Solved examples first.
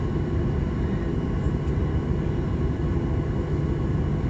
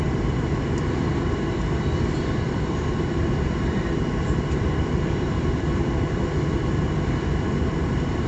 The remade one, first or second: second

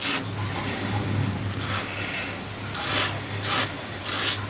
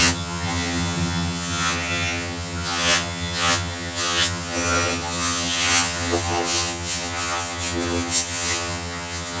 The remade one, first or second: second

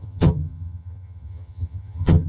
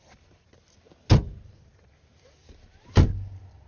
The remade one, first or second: first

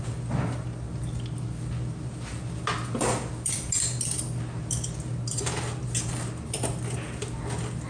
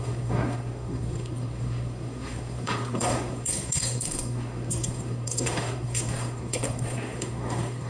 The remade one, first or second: second